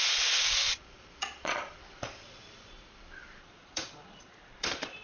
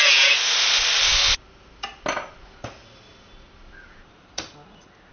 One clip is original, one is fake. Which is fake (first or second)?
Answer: first